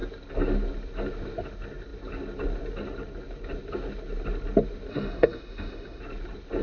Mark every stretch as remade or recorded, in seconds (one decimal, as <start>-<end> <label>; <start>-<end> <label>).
0.0-4.9 recorded; 4.9-6.0 remade; 6.0-6.6 recorded